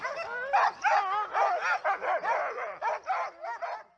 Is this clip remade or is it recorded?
recorded